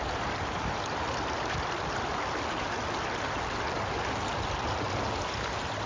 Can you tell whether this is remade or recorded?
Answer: recorded